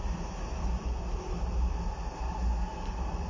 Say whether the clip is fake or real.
real